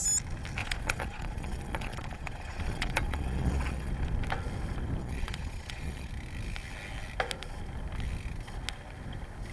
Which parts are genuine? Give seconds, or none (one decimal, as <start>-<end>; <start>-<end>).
0.0-0.6; 3.9-5.0; 6.1-9.5